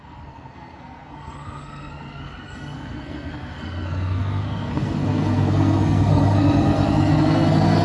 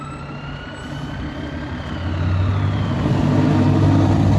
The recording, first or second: second